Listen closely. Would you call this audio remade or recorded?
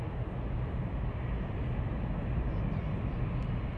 recorded